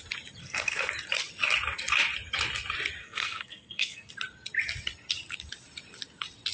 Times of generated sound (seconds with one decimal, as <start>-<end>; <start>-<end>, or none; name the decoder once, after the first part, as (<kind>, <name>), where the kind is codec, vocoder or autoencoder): 0.4-0.9 (codec, SNAC); 3.0-4.1